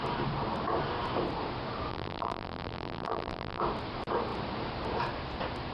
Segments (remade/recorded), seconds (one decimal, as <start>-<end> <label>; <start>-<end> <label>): 0.0-1.9 recorded; 1.9-3.6 remade; 3.6-5.7 recorded